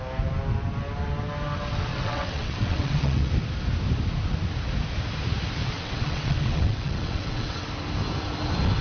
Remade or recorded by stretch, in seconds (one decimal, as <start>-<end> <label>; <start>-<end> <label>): 0.0-1.9 recorded; 1.9-3.3 remade; 3.3-5.6 recorded; 5.6-7.6 remade; 7.6-8.8 recorded